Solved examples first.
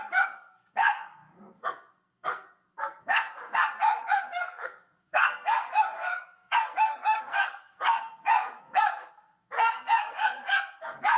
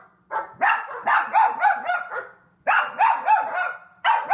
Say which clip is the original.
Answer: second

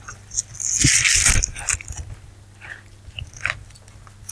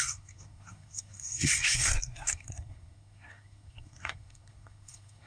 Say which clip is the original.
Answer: first